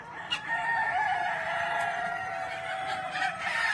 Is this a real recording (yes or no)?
no